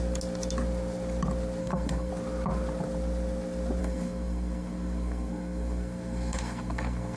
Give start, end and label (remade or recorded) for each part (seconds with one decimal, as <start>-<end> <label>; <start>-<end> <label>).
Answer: 0.0-1.6 recorded; 1.6-2.1 remade; 2.1-3.8 recorded; 3.8-7.2 remade